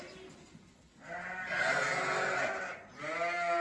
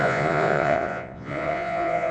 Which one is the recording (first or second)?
first